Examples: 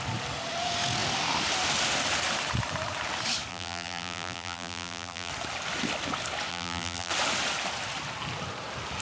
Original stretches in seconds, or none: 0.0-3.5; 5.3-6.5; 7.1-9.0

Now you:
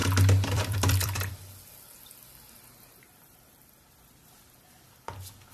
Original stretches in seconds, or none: 1.3-5.5

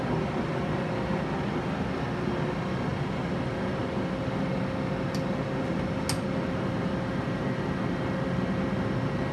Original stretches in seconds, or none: 0.0-9.3

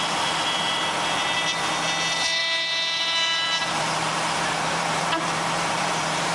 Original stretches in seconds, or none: 0.0-2.4

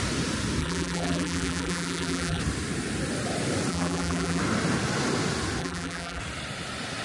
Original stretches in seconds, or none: 0.0-0.6; 2.4-3.7; 4.4-5.6; 6.2-7.0